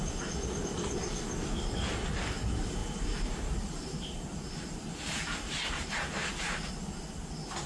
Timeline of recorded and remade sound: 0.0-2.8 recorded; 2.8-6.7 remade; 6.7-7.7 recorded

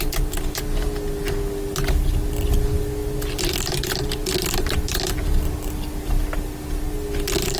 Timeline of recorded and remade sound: 0.0-7.6 recorded

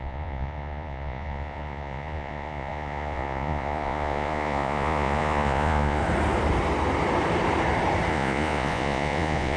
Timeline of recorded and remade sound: 0.0-6.0 remade; 6.0-8.1 recorded; 8.1-9.6 remade